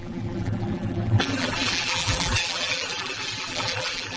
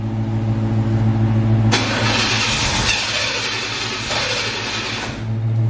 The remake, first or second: first